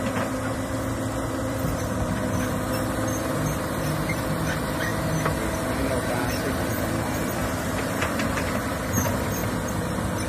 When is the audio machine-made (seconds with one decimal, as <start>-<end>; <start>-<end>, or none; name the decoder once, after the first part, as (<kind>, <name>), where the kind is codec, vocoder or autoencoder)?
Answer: 0.0-4.9 (vocoder, BigVGAN v2); 6.1-9.4